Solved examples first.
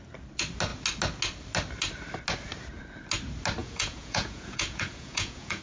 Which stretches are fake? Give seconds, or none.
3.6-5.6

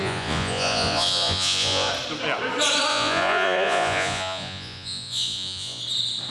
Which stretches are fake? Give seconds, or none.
0.0-1.9; 2.9-5.8